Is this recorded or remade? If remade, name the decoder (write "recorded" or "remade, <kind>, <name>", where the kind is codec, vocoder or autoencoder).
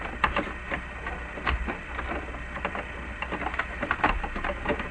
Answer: recorded